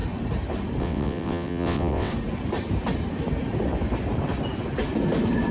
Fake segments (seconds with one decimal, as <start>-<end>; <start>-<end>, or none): 0.8-2.1